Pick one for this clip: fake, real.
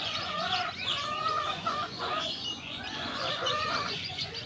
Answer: fake